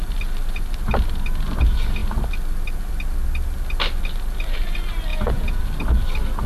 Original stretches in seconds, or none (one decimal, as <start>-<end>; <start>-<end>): 0.0-5.1; 5.6-6.5